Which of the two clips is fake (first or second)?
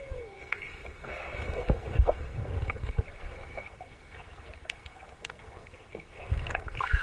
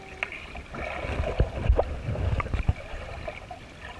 first